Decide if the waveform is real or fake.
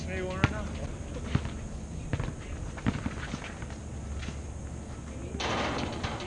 real